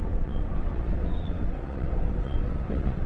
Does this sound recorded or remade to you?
remade